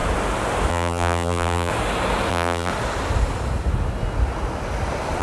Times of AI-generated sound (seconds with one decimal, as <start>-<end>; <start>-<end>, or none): 0.7-1.7; 2.3-2.7